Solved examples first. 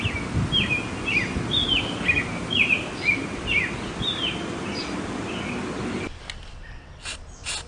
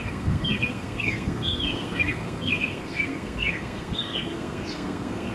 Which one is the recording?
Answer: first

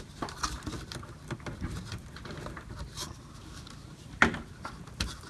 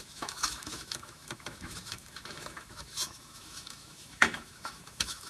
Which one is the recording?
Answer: first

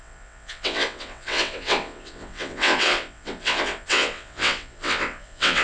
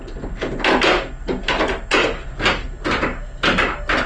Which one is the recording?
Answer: second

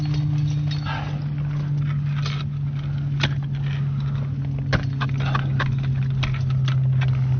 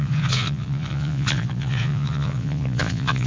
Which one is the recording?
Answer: first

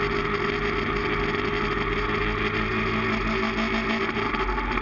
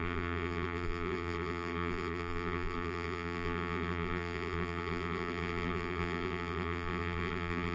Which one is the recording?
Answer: first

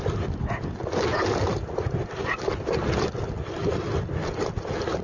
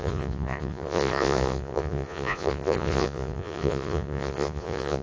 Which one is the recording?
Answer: first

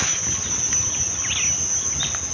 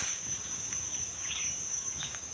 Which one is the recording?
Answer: first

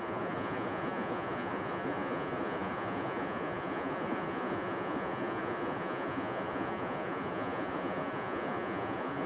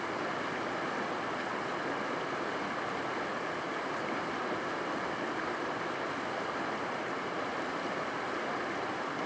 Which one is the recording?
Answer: second